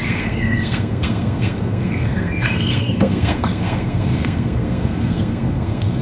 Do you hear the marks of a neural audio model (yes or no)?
yes